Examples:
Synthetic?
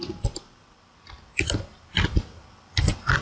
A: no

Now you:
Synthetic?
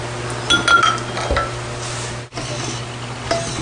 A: no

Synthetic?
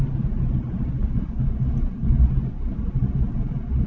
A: no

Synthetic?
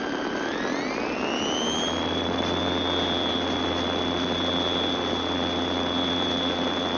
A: no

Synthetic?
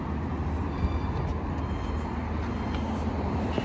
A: no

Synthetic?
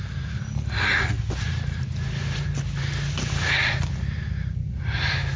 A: no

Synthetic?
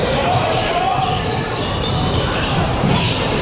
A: yes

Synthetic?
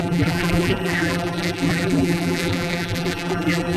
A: yes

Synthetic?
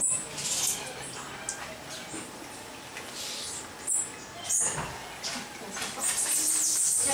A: no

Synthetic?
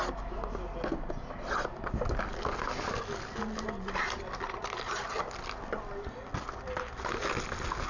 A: no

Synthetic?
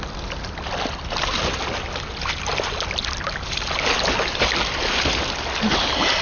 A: no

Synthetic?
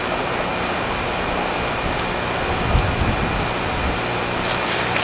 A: no